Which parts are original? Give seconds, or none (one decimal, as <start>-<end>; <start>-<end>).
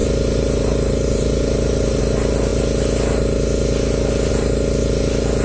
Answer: 2.0-5.4